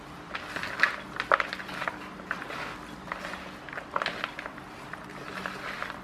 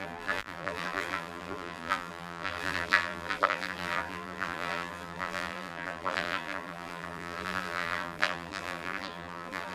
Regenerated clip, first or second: second